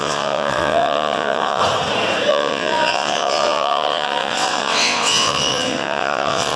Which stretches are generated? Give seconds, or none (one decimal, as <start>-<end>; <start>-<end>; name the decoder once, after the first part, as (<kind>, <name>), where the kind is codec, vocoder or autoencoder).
0.0-1.6 (vocoder, WaveNeXt); 2.3-6.6